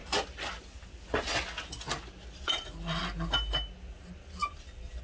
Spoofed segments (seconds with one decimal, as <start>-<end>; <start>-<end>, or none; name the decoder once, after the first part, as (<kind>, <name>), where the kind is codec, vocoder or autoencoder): none